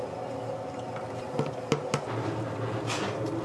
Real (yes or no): yes